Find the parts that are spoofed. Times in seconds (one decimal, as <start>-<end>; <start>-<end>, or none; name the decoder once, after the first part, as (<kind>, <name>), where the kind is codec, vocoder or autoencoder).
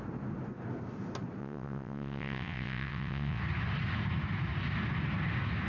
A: 1.4-3.4 (vocoder, WaveNeXt)